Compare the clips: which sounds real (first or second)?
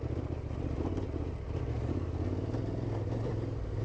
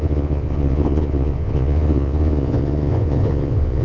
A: first